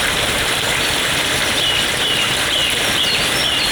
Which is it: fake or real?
real